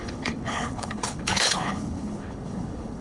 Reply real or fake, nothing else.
fake